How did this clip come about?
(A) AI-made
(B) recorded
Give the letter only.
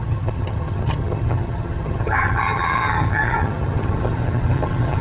A